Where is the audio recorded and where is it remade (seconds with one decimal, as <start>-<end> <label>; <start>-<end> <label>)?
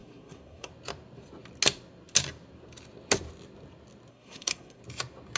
0.0-0.7 remade; 0.7-4.1 recorded; 4.1-4.8 remade; 4.8-5.4 recorded